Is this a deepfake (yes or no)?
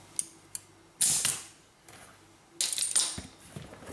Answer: no